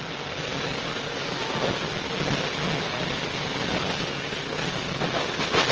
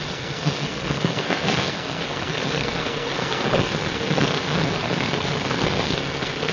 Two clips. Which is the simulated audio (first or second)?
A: second